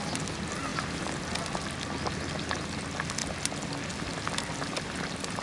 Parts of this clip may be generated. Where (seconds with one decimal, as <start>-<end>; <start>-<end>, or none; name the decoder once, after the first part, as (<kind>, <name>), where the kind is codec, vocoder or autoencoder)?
none